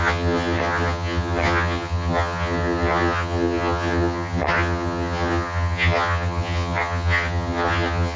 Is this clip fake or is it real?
fake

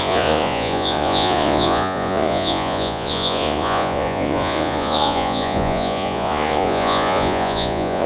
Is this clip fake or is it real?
fake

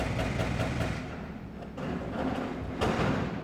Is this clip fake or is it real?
real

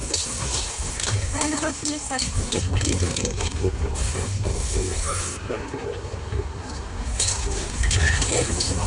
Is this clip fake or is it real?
fake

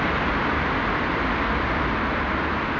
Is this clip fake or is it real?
real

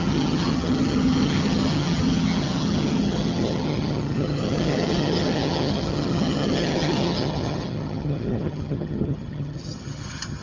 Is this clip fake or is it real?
fake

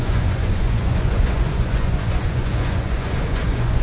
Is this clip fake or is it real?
fake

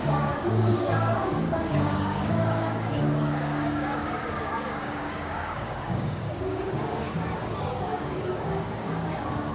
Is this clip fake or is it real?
fake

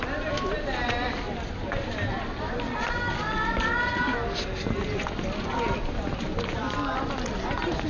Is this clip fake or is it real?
real